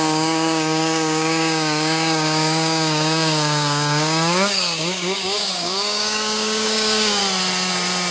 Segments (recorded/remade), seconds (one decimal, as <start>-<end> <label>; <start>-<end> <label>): 0.0-7.2 remade; 7.2-8.1 recorded